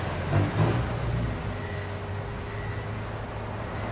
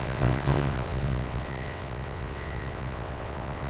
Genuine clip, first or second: first